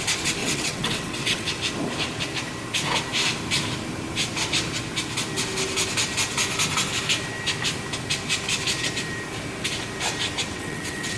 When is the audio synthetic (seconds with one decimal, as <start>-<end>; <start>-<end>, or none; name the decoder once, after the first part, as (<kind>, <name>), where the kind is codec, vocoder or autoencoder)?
0.4-1.5 (vocoder, WaveNeXt); 10.5-11.2